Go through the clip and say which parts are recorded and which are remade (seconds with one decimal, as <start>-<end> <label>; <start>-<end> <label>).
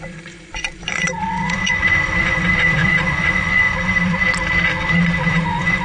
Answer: 0.0-4.2 remade; 4.2-5.3 recorded; 5.3-5.8 remade